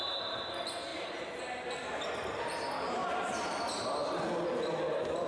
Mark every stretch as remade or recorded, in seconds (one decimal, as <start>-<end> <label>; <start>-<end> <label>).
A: 0.0-0.9 recorded; 0.9-1.4 remade; 1.4-3.0 recorded; 3.0-3.6 remade; 3.6-5.3 recorded